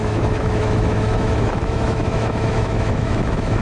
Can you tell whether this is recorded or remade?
remade